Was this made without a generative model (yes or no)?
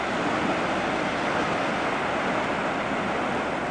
yes